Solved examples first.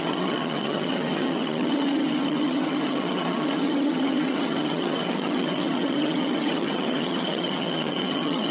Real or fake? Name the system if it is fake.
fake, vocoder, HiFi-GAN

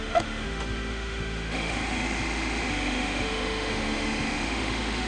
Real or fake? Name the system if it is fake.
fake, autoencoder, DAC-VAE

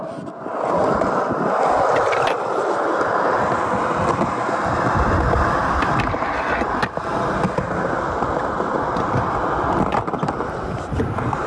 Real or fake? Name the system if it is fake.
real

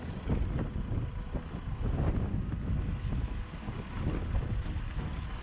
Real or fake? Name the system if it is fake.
real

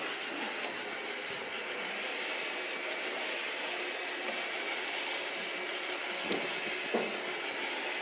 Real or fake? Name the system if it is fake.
real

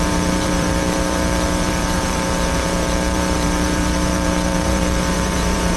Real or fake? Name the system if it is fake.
fake, vocoder, BigVGAN v2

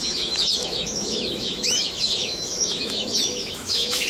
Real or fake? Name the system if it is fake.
fake, autoencoder, DAC-VAE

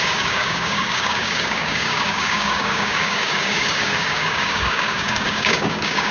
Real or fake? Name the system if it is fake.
fake, codec, DAC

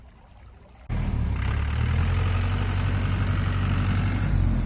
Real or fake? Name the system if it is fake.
real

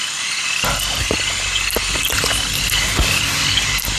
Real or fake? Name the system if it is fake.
real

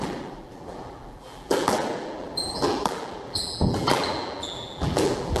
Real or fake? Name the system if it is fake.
fake, vocoder, BigVGAN v2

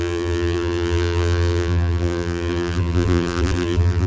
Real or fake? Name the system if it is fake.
fake, vocoder, BigVGAN v2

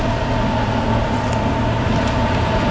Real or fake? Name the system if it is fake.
fake, vocoder, BigVGAN v2